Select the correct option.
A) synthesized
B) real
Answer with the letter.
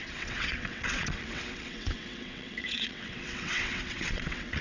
A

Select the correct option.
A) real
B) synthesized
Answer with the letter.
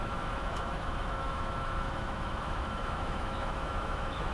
B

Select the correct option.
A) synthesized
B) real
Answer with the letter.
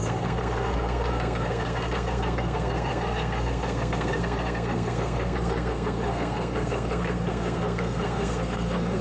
A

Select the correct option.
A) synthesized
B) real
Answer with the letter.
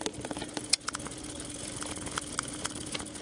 A